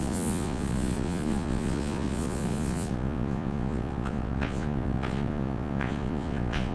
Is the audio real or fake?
fake